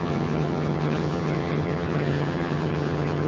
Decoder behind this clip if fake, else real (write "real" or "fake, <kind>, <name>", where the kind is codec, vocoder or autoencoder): fake, vocoder, HiFi-GAN